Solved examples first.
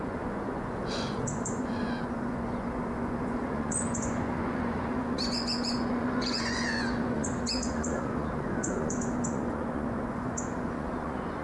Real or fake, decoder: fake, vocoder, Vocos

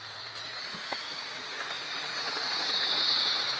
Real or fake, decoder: fake, vocoder, Vocos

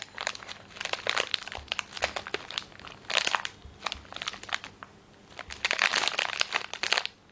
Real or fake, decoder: real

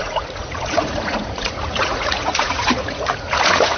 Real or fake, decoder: fake, vocoder, Vocos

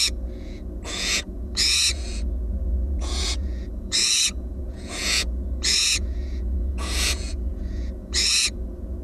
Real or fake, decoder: fake, vocoder, Vocos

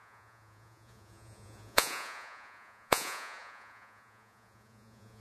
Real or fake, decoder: fake, vocoder, Vocos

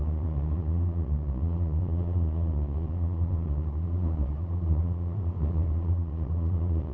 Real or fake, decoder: fake, vocoder, Vocos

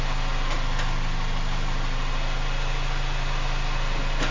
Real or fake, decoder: real